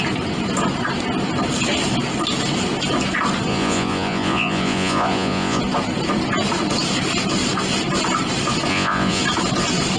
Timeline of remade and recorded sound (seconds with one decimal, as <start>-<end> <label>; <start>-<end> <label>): 0.0-3.5 recorded; 3.5-5.6 remade; 5.6-8.7 recorded; 8.7-9.2 remade; 9.2-10.0 recorded